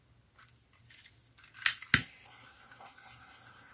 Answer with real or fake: real